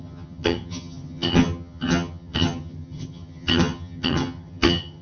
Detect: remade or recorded remade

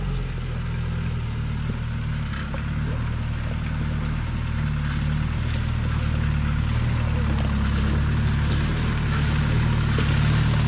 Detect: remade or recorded recorded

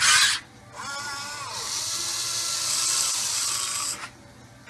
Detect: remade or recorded recorded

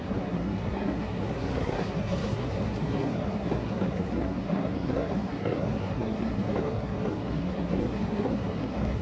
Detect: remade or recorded remade